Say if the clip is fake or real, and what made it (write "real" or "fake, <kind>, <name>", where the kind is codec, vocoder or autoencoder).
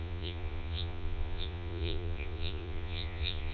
fake, vocoder, Vocos